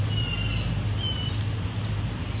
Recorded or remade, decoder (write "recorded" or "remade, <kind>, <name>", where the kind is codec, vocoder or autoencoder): recorded